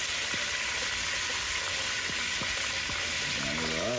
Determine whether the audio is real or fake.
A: real